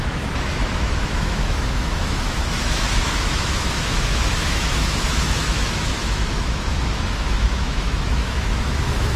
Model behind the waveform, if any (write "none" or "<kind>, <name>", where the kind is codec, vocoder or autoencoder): autoencoder, DAC-VAE